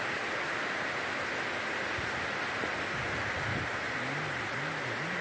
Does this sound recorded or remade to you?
recorded